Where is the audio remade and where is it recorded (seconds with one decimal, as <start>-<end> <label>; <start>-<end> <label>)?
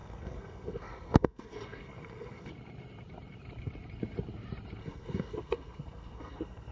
0.0-2.5 remade; 2.5-4.8 recorded; 4.8-6.7 remade